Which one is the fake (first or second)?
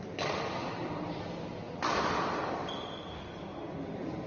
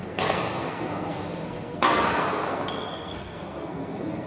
second